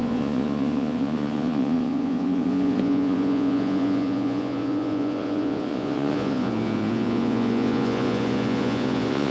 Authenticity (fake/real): fake